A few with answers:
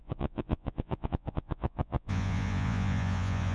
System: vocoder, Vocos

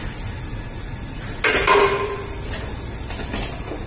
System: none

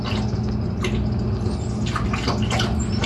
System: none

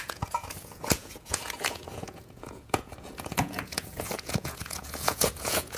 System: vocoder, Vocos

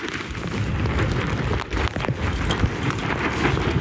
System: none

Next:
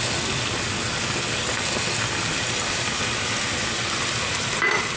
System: none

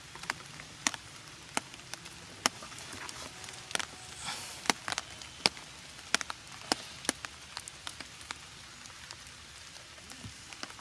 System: none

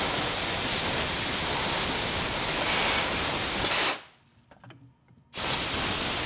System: none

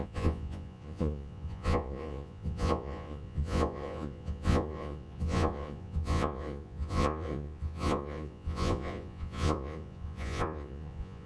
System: vocoder, Vocos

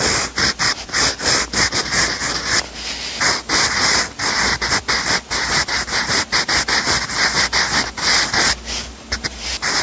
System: none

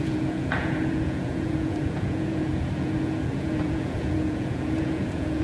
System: vocoder, Vocos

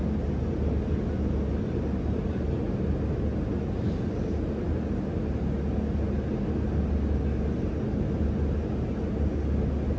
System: none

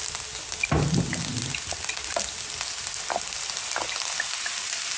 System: none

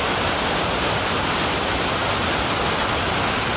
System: none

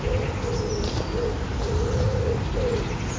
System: none